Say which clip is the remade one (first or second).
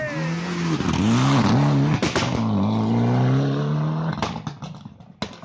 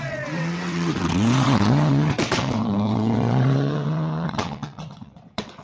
second